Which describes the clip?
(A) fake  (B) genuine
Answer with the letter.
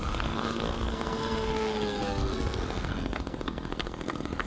A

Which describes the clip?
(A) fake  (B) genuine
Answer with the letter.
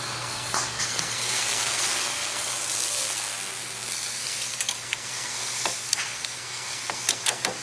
A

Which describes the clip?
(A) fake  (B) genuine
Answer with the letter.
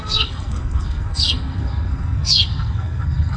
A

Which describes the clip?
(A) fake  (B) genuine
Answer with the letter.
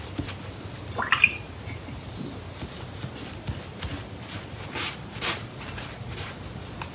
B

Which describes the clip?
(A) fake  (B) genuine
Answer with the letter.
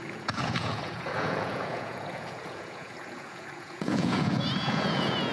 A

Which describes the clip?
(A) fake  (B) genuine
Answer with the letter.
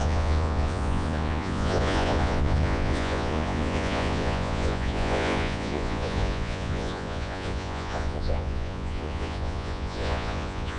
A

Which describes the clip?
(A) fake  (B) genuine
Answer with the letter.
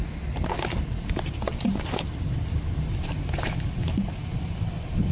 B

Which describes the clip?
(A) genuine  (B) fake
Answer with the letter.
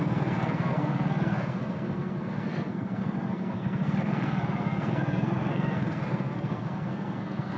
B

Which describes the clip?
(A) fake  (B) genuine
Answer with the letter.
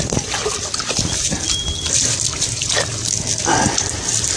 B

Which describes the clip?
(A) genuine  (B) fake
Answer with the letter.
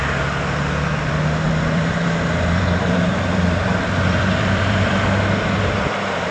B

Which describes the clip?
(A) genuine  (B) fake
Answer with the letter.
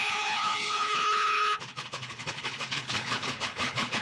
B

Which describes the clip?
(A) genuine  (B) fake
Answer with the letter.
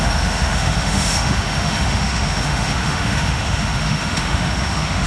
B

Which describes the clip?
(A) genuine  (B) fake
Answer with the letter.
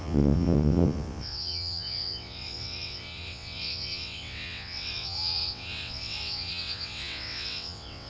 B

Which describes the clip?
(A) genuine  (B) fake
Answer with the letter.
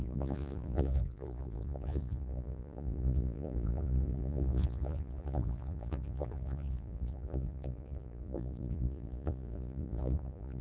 B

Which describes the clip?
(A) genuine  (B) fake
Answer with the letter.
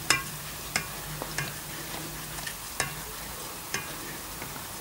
A